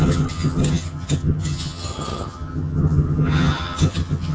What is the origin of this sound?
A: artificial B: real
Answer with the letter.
A